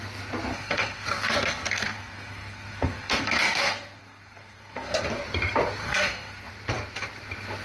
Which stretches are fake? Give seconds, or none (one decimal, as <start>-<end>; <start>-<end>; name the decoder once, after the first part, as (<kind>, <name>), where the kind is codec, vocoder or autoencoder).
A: 0.5-5.0 (codec, SNAC); 5.8-6.5